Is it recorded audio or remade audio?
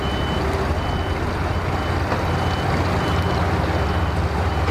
recorded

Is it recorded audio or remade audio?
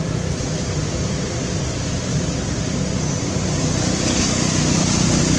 remade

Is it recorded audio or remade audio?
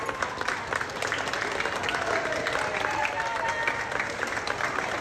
recorded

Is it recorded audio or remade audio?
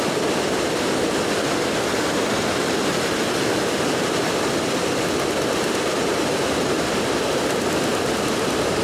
recorded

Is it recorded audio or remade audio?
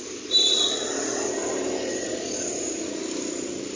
recorded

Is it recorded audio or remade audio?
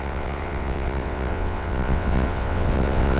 remade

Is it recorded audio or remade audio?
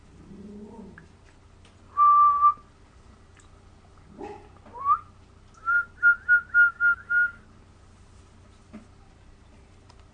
recorded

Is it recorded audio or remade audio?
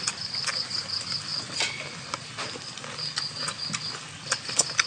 recorded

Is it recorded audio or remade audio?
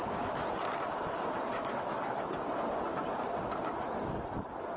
recorded